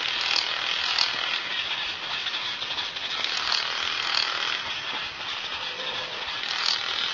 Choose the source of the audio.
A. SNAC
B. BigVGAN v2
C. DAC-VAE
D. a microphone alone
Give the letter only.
D